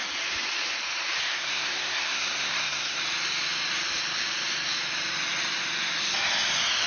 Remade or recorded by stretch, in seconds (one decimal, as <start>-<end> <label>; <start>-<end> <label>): 0.0-1.2 recorded; 1.2-3.0 remade; 3.0-6.9 recorded